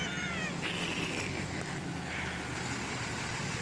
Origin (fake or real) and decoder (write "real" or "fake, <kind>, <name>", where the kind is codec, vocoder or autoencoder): real